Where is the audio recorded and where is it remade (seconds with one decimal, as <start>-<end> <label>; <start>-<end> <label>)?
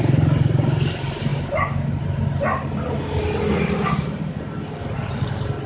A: 0.0-5.7 recorded